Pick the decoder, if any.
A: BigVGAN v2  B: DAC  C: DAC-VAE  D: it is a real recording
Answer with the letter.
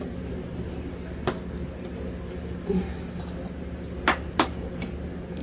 D